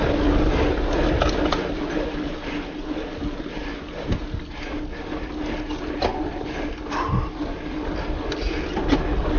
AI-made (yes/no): no